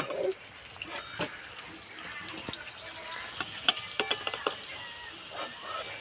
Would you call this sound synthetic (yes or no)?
no